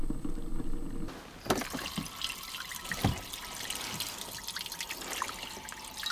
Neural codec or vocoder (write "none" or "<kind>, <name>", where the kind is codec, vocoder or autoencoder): none